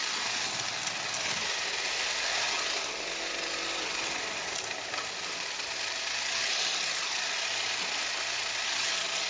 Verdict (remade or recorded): recorded